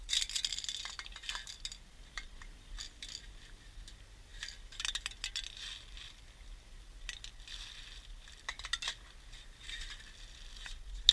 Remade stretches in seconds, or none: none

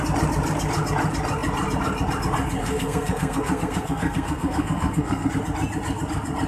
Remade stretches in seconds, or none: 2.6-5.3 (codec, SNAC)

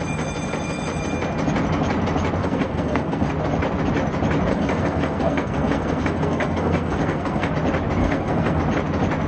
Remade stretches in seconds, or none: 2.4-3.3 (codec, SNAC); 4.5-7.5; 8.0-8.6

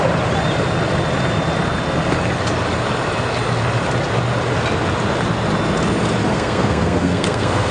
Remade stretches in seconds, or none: 6.3-7.7 (codec, SNAC)

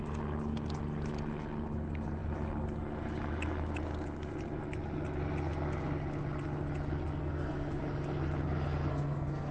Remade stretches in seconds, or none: 7.2-7.8 (codec, SNAC); 8.9-9.5

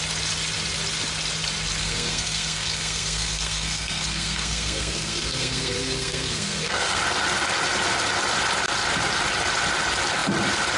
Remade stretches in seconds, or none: 1.8-7.0 (codec, SNAC)